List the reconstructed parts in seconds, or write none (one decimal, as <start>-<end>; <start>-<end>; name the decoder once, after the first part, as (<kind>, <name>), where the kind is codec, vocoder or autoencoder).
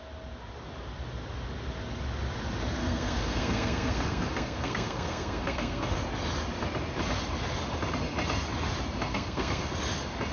2.8-6.0 (codec, SNAC); 9.1-9.7